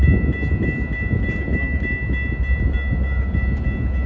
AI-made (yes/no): no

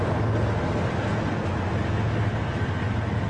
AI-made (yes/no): no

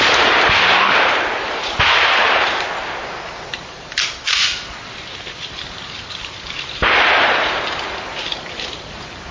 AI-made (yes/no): yes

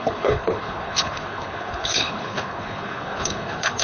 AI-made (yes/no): yes